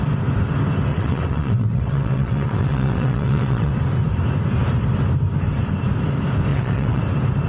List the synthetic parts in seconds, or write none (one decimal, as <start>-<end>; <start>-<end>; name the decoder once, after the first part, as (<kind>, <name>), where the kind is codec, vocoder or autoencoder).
0.9-3.7 (vocoder, WaveNeXt); 6.5-7.0

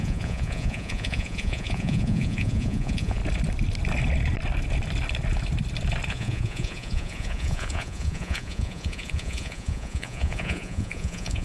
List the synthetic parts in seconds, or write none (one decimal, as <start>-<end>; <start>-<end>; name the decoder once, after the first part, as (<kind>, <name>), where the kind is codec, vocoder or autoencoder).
0.0-3.2 (vocoder, Vocos); 6.1-11.4

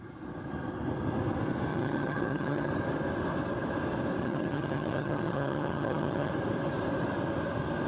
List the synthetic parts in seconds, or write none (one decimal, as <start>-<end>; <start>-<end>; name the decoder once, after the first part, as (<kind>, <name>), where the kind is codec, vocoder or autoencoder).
1.7-2.7 (vocoder, HiFi-GAN); 4.2-6.3

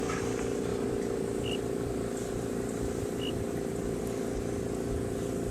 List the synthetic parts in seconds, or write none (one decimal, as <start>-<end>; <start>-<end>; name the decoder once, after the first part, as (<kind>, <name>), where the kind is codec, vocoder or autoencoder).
0.7-4.0 (vocoder, BigVGAN v2)

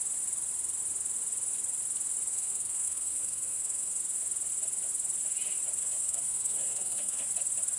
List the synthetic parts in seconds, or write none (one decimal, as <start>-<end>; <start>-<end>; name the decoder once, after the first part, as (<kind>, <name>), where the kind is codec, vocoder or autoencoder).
2.3-4.0 (codec, SNAC); 5.8-7.3

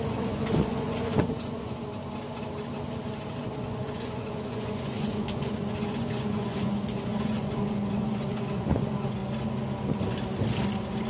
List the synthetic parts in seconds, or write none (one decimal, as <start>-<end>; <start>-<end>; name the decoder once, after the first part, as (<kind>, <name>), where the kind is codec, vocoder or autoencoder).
0.0-1.8 (vocoder, Vocos); 3.4-9.2

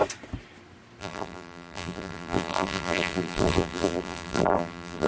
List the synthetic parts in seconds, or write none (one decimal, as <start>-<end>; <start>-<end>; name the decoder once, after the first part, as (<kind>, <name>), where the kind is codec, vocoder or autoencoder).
1.0-5.1 (vocoder, BigVGAN v2)

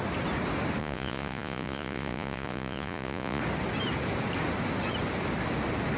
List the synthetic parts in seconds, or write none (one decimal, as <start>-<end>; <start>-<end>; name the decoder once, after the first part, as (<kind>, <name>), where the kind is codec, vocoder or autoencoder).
0.8-3.4 (vocoder, Vocos)